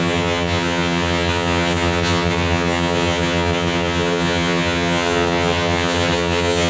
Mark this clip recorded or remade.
remade